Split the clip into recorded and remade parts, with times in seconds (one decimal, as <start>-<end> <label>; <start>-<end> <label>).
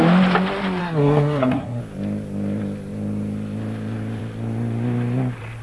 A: 0.0-0.8 recorded; 0.8-1.8 remade; 1.8-5.6 recorded